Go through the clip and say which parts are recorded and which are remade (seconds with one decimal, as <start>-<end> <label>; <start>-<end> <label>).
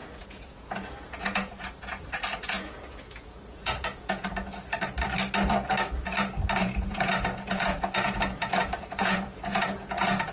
0.0-4.3 remade; 4.3-6.6 recorded; 6.6-10.3 remade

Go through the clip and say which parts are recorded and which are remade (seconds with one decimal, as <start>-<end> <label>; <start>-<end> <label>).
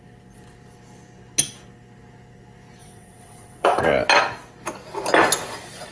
0.0-2.8 recorded; 2.8-3.8 remade; 3.8-5.9 recorded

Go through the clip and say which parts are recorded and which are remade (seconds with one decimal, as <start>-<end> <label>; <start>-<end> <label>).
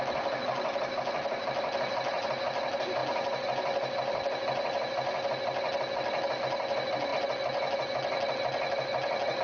0.0-9.4 recorded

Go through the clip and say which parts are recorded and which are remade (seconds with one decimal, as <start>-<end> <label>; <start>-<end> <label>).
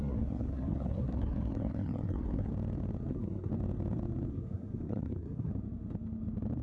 0.0-2.5 remade; 2.5-3.1 recorded; 3.1-3.5 remade; 3.5-4.3 recorded; 4.3-5.5 remade; 5.5-6.6 recorded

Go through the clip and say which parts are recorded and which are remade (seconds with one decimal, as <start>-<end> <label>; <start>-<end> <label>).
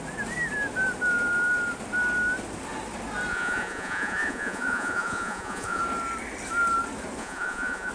0.0-3.3 recorded; 3.3-5.8 remade; 5.8-7.2 recorded; 7.2-7.9 remade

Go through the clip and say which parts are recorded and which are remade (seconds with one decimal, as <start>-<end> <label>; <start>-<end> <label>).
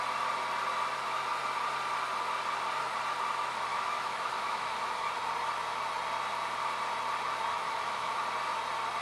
0.0-3.7 recorded; 3.7-5.1 remade; 5.1-7.5 recorded; 7.5-8.2 remade; 8.2-9.0 recorded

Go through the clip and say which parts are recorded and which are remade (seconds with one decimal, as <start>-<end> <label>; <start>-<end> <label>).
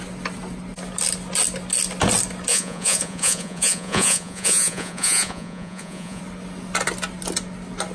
0.0-2.5 recorded; 2.5-6.2 remade; 6.2-7.9 recorded